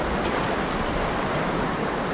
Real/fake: real